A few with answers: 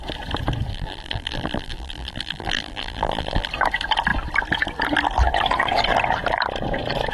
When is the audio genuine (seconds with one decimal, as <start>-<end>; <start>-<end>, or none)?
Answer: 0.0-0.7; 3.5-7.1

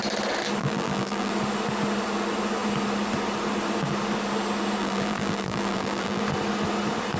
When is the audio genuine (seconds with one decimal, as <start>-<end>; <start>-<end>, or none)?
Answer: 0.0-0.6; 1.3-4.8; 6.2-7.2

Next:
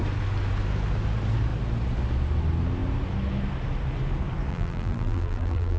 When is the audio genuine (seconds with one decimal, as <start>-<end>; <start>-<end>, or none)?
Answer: 0.0-4.5

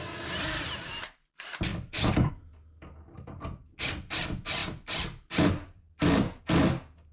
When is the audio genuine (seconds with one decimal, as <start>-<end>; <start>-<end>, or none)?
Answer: 0.0-1.7; 2.3-4.6; 6.4-7.1

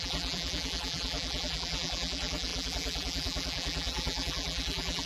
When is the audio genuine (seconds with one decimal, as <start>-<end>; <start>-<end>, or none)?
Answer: none

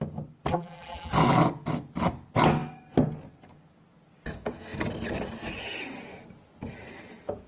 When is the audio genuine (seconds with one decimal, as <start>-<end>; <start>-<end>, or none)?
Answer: 0.0-0.5; 1.1-7.5

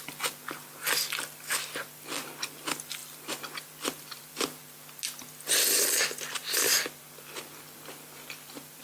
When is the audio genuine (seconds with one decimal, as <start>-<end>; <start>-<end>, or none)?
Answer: 0.0-3.0; 4.6-6.4

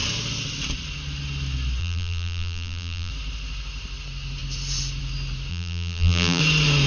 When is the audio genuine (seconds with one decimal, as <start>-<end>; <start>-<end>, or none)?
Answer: 0.0-1.8; 3.1-5.5; 6.4-6.9